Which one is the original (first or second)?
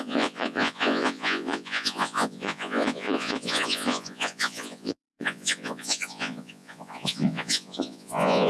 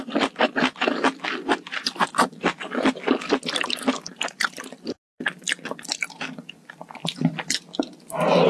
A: second